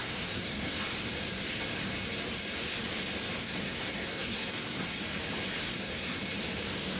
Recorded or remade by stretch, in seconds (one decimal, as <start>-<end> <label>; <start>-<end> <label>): 0.0-0.8 remade; 0.8-3.4 recorded; 3.4-5.0 remade; 5.0-5.6 recorded; 5.6-6.2 remade; 6.2-7.0 recorded